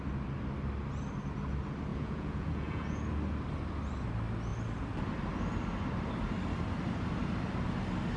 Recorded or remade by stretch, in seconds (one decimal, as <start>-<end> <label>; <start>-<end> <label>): 0.0-1.9 recorded; 1.9-3.0 remade; 3.0-8.2 recorded